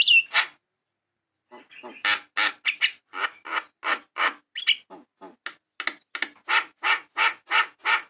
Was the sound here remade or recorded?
recorded